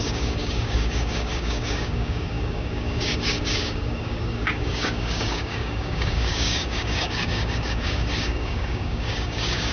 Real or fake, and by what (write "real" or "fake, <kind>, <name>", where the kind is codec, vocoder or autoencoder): fake, codec, DAC